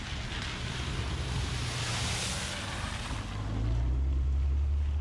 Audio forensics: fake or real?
real